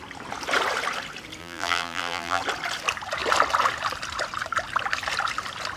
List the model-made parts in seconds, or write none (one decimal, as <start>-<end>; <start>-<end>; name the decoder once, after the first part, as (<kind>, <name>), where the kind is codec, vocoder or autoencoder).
1.4-2.4 (vocoder, BigVGAN v2)